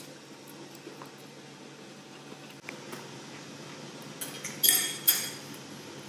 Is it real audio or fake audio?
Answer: real